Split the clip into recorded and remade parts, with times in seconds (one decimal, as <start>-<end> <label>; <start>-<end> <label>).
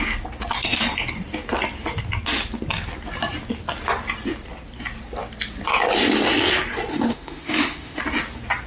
0.0-6.9 recorded; 6.9-8.0 remade; 8.0-8.7 recorded